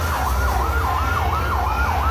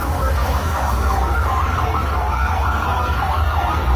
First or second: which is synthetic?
second